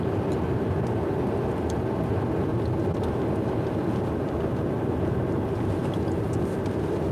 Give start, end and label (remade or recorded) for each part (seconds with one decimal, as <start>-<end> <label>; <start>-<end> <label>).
0.0-7.1 recorded